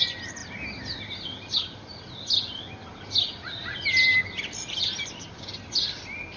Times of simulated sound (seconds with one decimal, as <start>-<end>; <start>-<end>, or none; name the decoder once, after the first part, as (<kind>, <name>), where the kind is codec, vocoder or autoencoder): none